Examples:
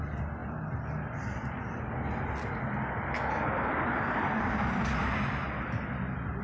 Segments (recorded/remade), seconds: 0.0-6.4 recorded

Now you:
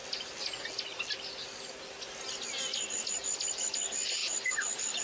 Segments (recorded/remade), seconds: 0.0-5.0 recorded

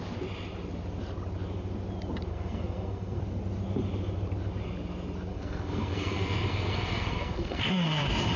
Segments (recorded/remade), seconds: 0.0-2.3 recorded; 2.3-3.2 remade; 3.2-5.3 recorded; 5.3-8.0 remade; 8.0-8.4 recorded

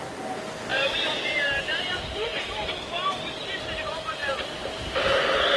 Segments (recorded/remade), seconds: 0.0-0.7 recorded; 0.7-2.6 remade; 2.6-4.2 recorded; 4.2-5.0 remade; 5.0-5.6 recorded